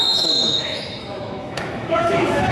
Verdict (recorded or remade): remade